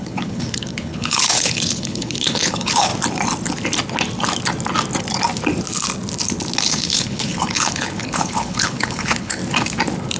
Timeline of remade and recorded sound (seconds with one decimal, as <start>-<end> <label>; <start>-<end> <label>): 0.0-2.9 remade; 2.9-6.6 recorded; 6.6-9.4 remade; 9.4-10.2 recorded